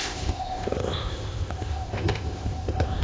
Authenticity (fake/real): fake